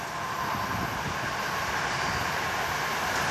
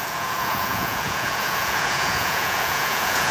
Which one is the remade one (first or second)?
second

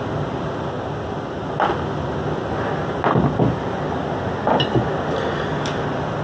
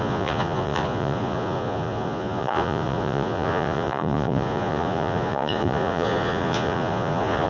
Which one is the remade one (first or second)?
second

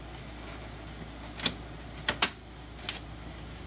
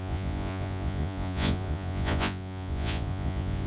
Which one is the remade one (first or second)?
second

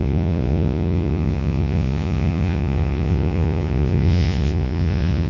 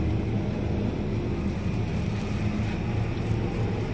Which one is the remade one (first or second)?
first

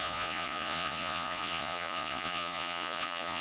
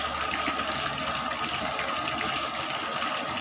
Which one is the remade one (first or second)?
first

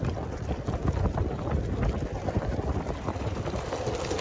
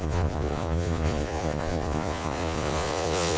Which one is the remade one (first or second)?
second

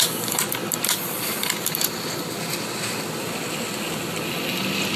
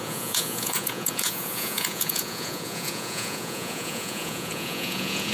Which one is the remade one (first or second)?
second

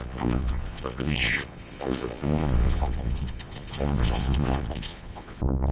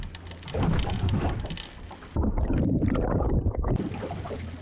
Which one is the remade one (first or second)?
first